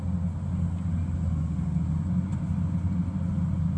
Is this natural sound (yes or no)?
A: yes